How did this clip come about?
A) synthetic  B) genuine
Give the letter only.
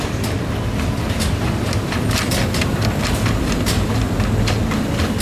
A